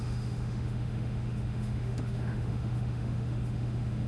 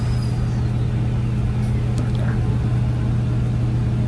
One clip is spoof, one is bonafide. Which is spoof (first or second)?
first